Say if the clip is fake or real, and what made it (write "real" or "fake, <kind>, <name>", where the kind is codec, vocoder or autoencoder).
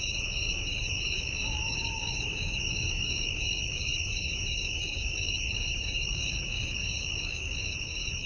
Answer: fake, codec, DAC